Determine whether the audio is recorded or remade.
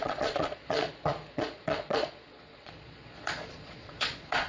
remade